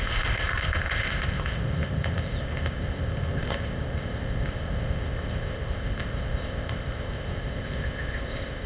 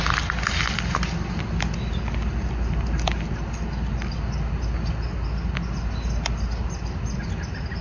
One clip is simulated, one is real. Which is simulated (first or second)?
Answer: first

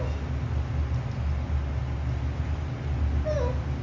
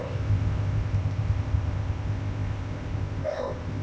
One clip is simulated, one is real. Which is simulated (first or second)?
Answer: second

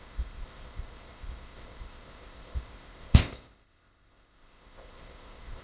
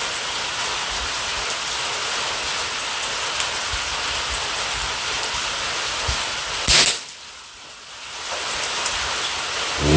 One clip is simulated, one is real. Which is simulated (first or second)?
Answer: first